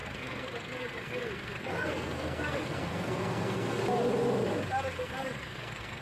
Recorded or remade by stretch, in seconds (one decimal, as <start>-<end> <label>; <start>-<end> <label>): 0.0-3.8 remade; 3.8-5.0 recorded; 5.0-6.0 remade